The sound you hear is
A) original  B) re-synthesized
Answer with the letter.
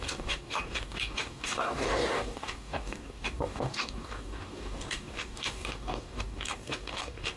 B